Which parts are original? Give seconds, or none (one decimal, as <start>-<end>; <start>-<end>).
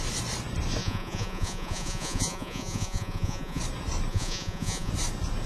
0.0-0.8; 3.6-4.1; 4.9-5.5